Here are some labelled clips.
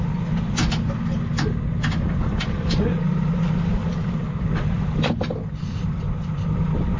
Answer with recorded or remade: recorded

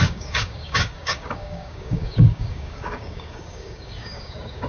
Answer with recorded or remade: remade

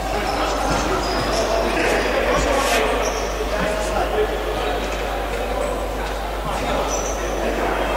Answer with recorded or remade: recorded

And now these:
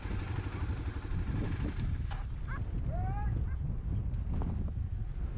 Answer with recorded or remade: recorded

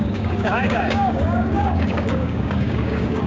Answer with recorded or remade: remade